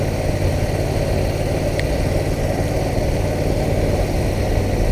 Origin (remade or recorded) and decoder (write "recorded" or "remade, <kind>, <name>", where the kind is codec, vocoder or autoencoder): recorded